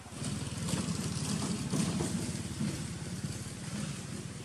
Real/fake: real